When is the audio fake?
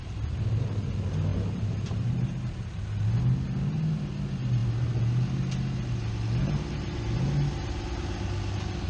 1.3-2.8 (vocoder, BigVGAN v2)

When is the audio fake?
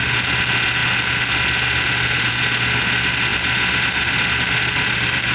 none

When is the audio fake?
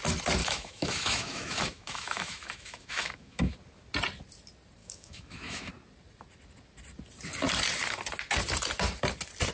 0.4-3.5 (autoencoder, DAC-VAE); 4.8-5.7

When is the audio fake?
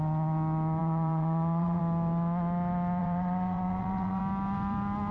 0.8-1.8 (vocoder, WaveNeXt); 3.0-4.2